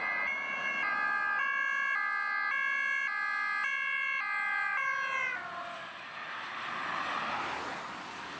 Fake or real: real